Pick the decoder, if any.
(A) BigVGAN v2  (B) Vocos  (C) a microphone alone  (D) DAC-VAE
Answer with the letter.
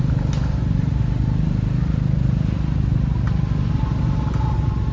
C